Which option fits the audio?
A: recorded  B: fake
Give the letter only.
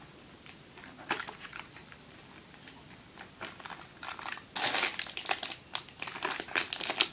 A